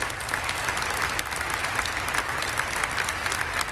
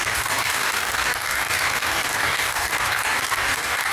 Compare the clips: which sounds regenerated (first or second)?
second